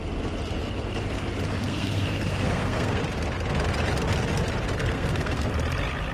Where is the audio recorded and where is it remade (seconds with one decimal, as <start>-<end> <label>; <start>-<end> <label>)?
0.0-1.6 recorded; 1.6-3.0 remade; 3.0-4.8 recorded; 4.8-5.5 remade; 5.5-6.1 recorded